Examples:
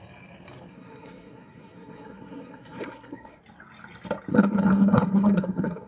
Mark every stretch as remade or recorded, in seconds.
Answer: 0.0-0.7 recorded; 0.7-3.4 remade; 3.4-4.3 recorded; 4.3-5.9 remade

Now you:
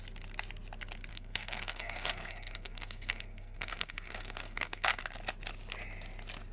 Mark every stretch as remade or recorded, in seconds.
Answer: 0.0-1.1 recorded; 1.1-5.0 remade; 5.0-6.5 recorded

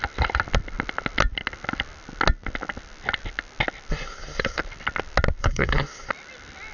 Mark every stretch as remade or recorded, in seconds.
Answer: 0.0-3.9 recorded; 3.9-4.6 remade; 4.6-5.4 recorded; 5.4-6.1 remade; 6.1-6.7 recorded

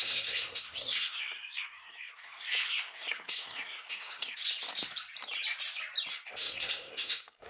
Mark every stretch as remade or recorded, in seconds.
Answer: 0.0-4.4 remade; 4.4-6.1 recorded; 6.1-7.5 remade